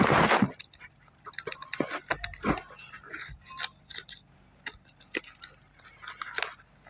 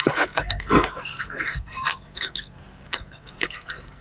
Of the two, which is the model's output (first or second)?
second